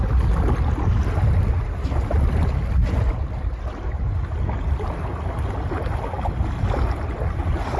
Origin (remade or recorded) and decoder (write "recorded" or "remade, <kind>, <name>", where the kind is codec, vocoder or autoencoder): recorded